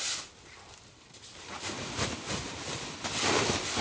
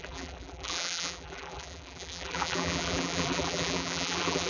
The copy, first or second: second